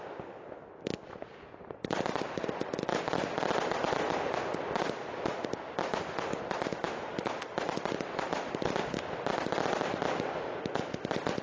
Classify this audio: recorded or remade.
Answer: recorded